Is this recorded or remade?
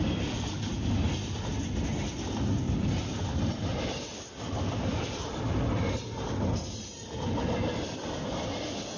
recorded